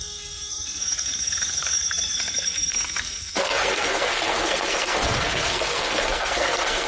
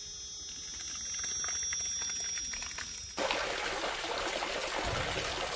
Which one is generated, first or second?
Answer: first